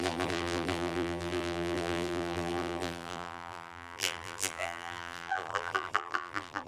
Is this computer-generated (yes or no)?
yes